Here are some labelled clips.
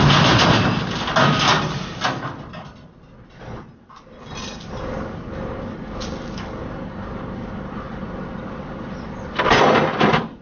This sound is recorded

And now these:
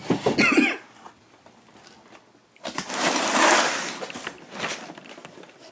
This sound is recorded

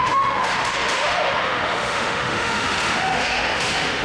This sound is remade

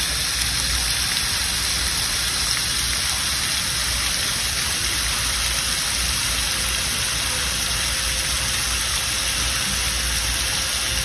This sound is recorded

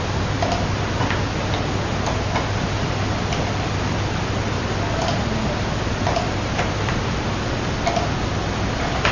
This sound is recorded